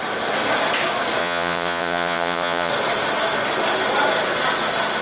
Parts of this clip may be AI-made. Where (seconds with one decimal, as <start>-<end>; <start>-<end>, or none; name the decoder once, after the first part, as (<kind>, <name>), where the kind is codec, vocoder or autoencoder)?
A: 1.2-2.7 (vocoder, Vocos)